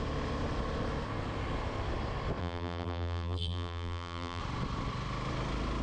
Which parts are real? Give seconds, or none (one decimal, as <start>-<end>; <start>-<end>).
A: 0.0-2.4; 4.4-5.8